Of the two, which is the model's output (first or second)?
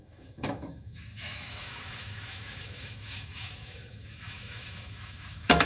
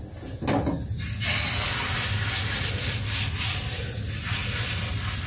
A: first